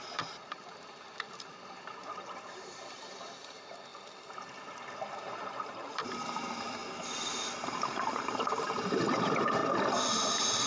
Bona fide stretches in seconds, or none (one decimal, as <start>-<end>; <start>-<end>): 3.9-5.1; 6.8-7.6; 9.6-10.7